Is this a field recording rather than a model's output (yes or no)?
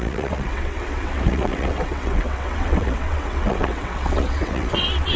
no